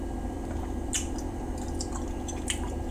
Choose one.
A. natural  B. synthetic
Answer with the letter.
A